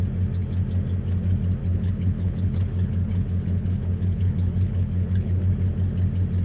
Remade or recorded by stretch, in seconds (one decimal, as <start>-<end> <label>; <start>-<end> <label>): 0.0-1.6 recorded; 1.6-5.4 remade; 5.4-6.4 recorded